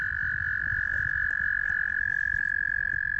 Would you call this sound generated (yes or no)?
no